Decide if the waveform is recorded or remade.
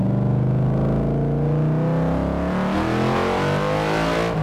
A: recorded